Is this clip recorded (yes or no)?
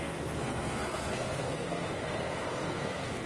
no